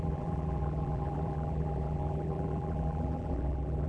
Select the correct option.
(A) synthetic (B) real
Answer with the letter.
A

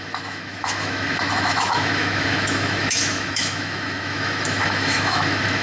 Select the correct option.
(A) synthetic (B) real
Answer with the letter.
A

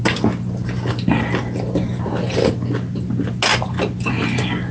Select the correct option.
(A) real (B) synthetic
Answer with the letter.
A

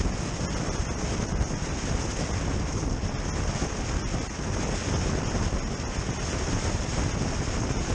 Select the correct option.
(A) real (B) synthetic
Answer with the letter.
A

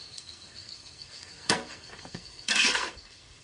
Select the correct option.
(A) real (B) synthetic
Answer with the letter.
B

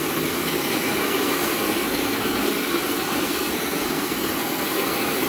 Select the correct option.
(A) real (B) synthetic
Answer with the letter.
B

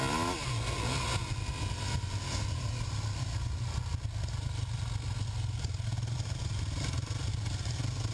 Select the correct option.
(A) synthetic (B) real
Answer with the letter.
B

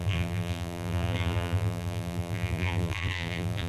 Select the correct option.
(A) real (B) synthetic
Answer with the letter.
B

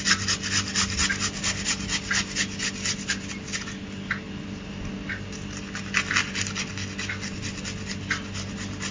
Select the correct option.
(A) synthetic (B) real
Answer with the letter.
B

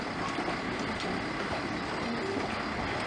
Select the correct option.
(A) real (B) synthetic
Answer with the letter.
A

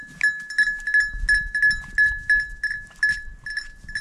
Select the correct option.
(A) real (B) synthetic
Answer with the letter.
A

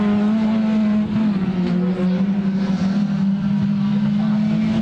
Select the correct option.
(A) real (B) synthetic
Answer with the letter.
A